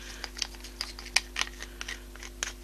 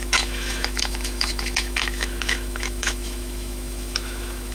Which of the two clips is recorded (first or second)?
first